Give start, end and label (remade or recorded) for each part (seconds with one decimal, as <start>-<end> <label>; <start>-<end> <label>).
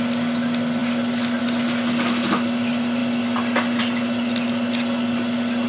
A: 0.0-5.7 recorded